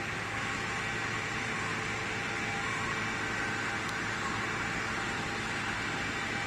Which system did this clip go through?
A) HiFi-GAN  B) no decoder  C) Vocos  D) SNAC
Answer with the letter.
B